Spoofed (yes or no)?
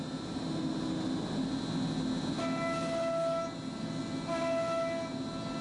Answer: no